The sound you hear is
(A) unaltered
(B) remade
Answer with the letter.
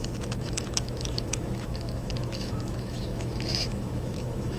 B